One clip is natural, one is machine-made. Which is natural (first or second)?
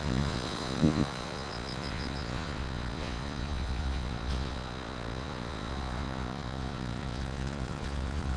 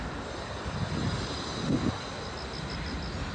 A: second